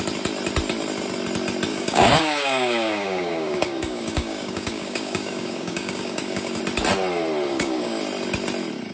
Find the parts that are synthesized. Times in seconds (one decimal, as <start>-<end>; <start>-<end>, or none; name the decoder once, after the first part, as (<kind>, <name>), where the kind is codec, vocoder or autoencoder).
1.7-6.6 (codec, DAC); 7.5-8.0